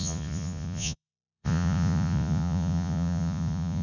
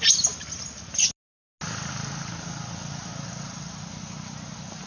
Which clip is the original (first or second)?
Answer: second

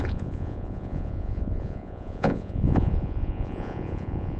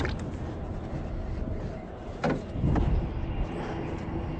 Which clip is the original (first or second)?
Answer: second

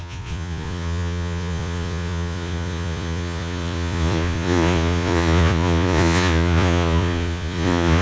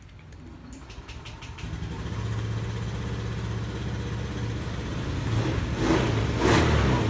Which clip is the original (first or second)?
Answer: second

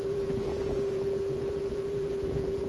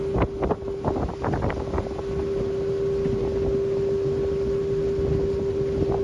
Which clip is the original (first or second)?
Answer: second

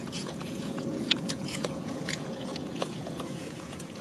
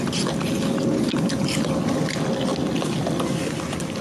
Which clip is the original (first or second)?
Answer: second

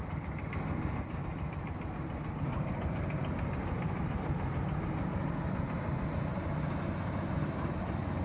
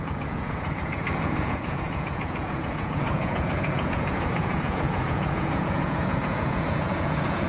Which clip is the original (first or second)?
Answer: first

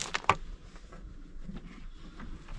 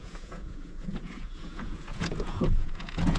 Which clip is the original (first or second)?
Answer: first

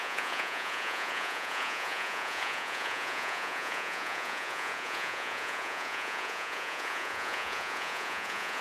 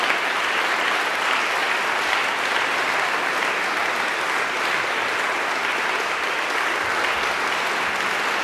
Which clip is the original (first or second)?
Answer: second